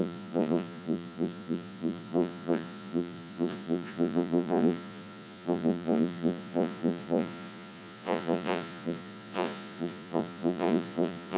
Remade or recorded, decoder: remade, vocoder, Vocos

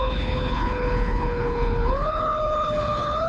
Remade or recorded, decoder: remade, codec, HILCodec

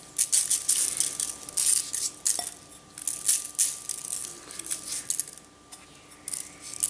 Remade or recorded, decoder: recorded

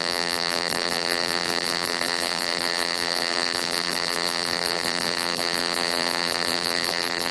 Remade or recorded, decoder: remade, vocoder, BigVGAN v2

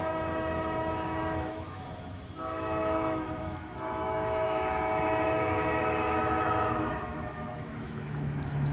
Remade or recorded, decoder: remade, autoencoder, DAC-VAE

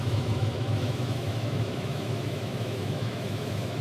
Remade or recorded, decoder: remade, autoencoder, DAC-VAE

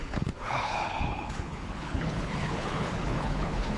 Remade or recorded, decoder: remade, codec, HILCodec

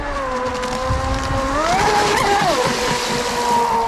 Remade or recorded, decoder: recorded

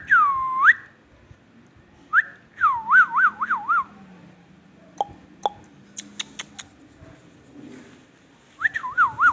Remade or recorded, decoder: recorded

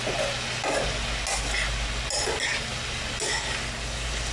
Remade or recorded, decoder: recorded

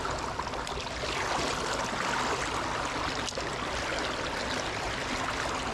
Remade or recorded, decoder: recorded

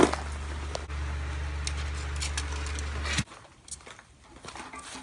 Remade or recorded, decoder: recorded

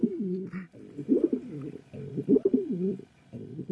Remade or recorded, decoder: recorded